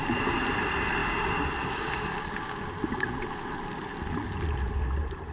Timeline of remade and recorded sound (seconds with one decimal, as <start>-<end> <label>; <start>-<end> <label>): 0.0-5.3 recorded